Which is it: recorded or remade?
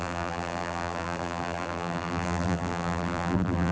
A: remade